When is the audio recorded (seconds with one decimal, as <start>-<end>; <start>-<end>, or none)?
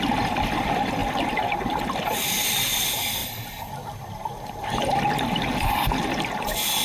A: 0.0-1.0; 1.6-3.2; 3.7-6.8